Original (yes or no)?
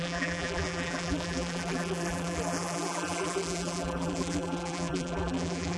no